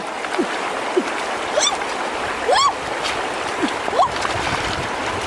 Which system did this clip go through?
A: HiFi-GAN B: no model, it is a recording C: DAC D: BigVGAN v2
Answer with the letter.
B